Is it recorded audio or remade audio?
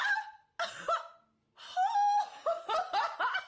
recorded